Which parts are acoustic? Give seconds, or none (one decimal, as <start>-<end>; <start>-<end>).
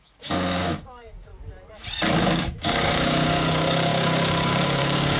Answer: 1.3-2.2